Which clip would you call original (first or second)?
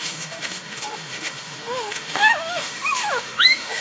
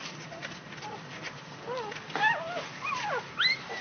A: second